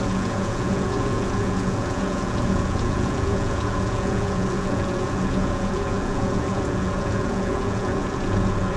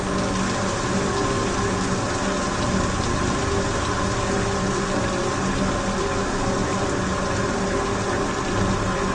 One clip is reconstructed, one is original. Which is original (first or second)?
second